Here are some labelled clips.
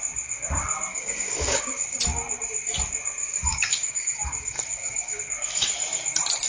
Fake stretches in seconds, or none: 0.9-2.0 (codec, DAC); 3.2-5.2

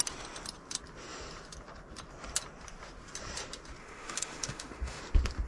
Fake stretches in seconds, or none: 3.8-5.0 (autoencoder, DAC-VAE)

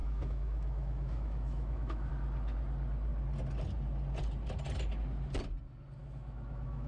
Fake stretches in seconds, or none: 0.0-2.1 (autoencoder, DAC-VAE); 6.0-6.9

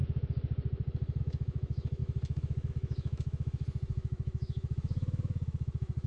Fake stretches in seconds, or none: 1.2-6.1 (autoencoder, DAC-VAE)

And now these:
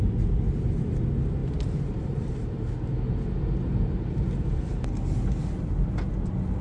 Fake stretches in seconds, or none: none